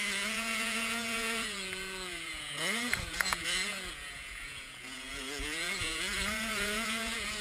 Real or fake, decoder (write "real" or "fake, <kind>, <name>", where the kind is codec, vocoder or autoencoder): fake, vocoder, Vocos